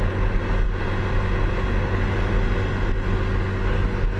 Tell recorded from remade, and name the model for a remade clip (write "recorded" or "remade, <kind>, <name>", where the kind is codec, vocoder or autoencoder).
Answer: recorded